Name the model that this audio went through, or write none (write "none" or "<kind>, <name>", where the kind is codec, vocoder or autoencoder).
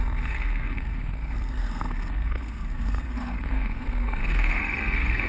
codec, SNAC